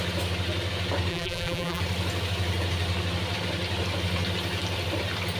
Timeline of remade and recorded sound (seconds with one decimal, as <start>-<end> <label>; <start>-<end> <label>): 0.0-1.1 recorded; 1.1-1.8 remade; 1.8-5.4 recorded